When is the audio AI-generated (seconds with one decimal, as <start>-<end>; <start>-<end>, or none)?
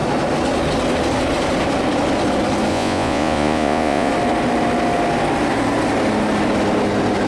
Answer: 2.7-4.1